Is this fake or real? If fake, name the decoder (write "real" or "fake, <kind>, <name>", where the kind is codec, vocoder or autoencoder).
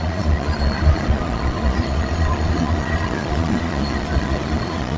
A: fake, vocoder, Vocos